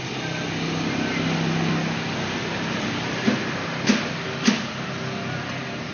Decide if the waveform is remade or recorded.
recorded